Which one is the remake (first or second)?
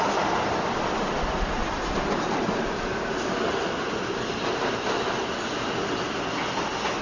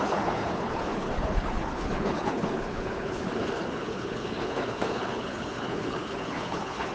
second